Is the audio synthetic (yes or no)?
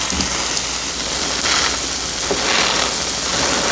no